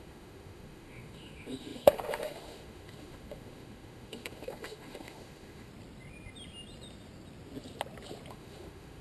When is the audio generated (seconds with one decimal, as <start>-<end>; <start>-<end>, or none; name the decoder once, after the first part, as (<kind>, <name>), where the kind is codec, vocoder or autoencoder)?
0.0-5.7 (autoencoder, DAC-VAE); 8.3-9.0